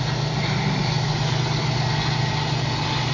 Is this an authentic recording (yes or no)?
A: yes